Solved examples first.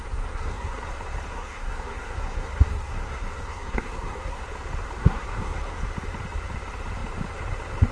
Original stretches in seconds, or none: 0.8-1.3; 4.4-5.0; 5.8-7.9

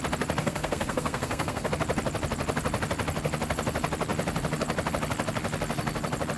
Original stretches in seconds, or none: 0.0-0.4; 1.7-6.4

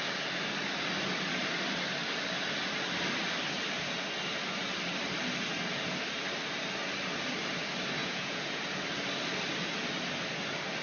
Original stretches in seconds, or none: 0.0-8.0; 8.6-10.8

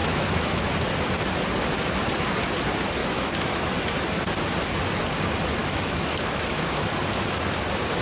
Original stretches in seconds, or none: 0.6-3.0; 3.6-5.6; 6.9-8.0

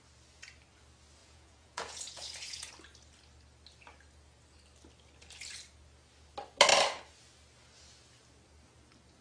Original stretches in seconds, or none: 0.0-1.2; 2.7-9.2

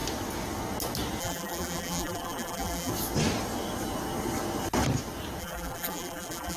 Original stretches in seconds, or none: 0.0-1.2; 2.9-5.4

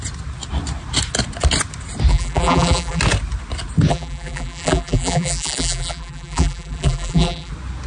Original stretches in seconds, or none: 0.0-2.1; 3.0-3.9; 7.5-7.9